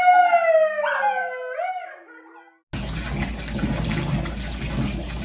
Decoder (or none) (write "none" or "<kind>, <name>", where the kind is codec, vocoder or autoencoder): none